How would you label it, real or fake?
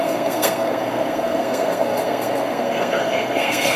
fake